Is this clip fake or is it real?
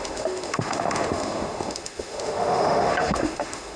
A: fake